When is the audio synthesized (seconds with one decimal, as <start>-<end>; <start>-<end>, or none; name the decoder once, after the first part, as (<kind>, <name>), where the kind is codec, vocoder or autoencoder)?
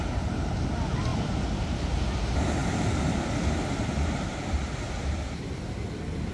2.6-5.6 (vocoder, BigVGAN v2)